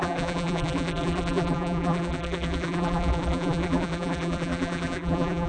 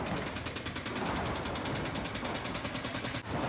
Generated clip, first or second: first